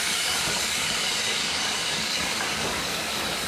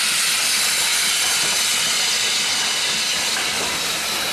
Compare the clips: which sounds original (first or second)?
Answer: second